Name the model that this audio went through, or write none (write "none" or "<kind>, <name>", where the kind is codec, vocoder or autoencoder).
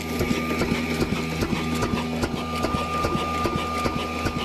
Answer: none